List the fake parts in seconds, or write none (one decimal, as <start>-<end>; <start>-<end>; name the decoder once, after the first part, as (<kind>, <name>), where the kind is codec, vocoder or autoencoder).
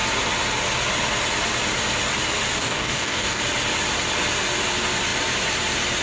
2.6-3.4 (codec, DAC)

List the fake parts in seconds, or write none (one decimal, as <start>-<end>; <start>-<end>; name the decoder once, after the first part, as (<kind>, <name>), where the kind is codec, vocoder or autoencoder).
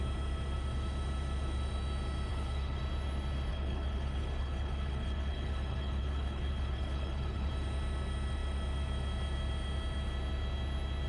2.3-2.8 (codec, HILCodec); 3.5-7.5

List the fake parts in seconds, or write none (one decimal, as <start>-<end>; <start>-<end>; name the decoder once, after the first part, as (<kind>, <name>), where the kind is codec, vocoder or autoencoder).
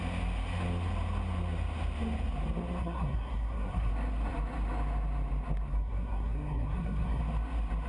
2.8-3.9 (codec, SNAC); 5.7-7.2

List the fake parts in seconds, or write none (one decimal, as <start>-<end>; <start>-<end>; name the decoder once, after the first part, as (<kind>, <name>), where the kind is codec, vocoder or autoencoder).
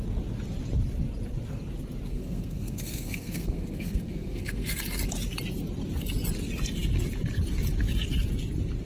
2.1-4.7 (codec, SNAC)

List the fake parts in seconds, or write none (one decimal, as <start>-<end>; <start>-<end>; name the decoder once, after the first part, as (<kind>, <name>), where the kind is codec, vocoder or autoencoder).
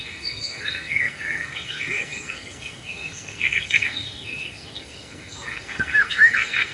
0.0-6.7 (codec, SNAC)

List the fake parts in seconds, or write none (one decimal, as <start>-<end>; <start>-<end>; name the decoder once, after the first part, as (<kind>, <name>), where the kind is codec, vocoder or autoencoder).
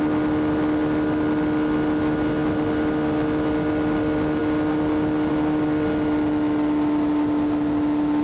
none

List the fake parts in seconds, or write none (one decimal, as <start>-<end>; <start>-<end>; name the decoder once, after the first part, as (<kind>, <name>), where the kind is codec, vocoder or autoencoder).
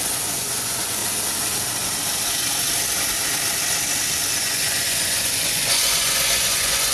0.0-1.0 (vocoder, Vocos); 4.4-6.9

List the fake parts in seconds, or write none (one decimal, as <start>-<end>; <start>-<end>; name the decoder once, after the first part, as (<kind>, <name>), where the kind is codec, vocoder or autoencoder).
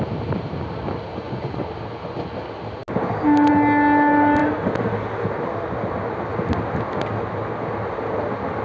1.1-1.7 (vocoder, Vocos)